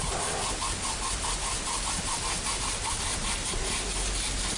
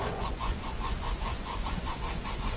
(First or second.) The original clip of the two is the first